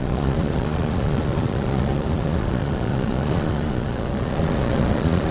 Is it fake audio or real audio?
fake